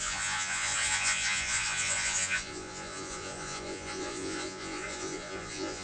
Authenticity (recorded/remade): remade